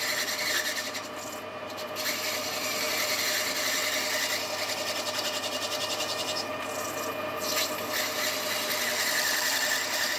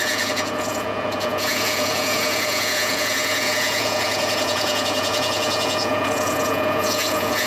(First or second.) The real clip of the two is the first